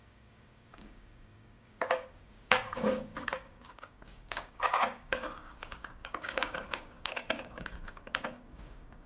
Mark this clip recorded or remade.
remade